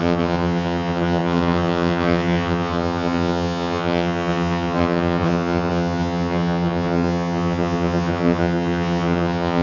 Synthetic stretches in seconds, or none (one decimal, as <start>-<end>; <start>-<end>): 0.0-9.6